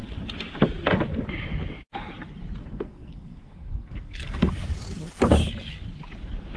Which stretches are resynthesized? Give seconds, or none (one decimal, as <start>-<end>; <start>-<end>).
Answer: 2.6-4.5